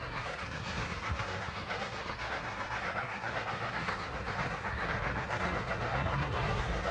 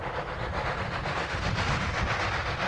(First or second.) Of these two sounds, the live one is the second